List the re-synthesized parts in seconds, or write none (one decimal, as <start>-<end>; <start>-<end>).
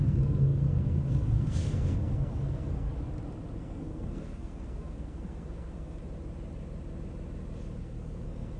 0.0-2.9; 3.6-6.0; 7.8-8.6